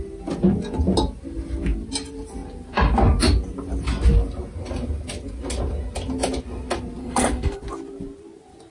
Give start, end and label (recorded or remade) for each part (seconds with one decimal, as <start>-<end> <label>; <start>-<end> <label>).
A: 0.0-7.0 recorded; 7.0-7.6 remade; 7.6-8.7 recorded